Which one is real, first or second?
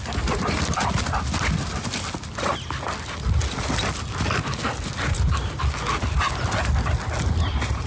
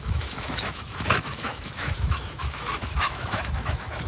first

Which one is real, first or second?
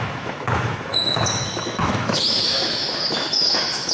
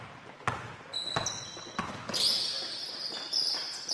second